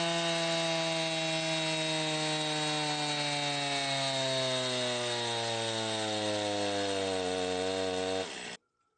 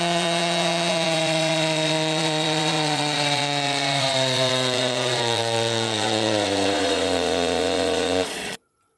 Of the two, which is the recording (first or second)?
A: first